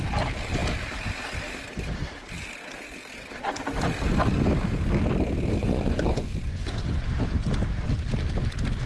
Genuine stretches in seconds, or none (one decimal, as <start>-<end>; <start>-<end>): 0.0-5.6; 7.0-8.9